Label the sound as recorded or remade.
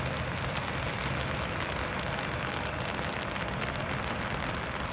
recorded